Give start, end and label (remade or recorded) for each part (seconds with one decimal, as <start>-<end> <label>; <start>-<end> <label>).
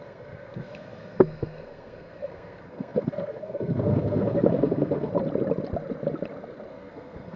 0.0-5.1 remade; 5.1-6.7 recorded; 6.7-7.4 remade